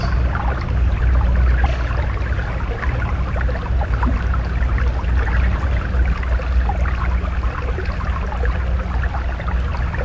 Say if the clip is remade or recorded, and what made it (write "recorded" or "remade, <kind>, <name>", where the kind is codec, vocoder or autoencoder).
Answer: recorded